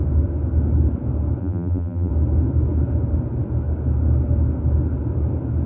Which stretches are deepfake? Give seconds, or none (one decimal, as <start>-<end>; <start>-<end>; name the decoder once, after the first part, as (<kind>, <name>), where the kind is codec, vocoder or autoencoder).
1.4-2.1 (vocoder, BigVGAN v2)